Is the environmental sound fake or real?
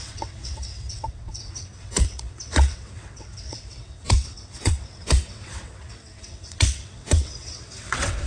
fake